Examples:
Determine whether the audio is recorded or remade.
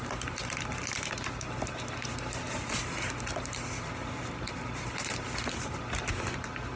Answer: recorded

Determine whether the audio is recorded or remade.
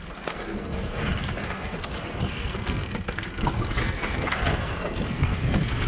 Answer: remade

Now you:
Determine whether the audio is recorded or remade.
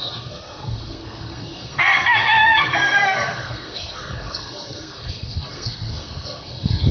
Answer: remade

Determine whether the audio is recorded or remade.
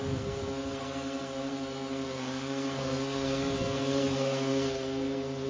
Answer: remade